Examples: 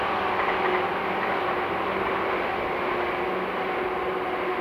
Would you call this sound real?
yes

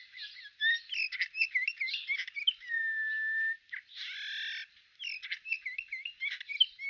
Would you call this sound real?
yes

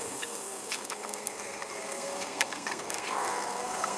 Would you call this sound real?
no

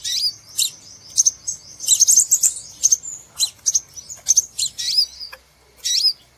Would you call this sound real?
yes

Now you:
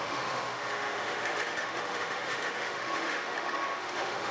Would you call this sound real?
no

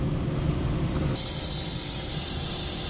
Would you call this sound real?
yes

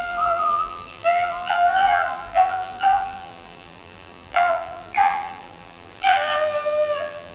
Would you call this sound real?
no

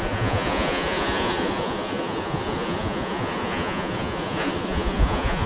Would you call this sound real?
no